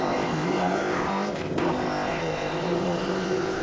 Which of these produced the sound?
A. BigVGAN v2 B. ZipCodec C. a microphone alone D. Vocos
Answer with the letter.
B